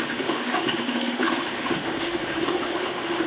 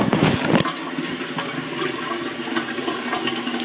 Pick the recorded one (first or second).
second